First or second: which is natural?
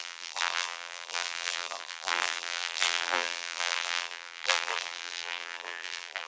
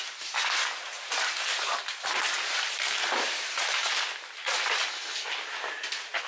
second